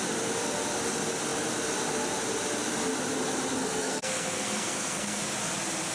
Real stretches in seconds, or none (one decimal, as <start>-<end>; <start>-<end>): 0.0-3.6; 5.2-5.9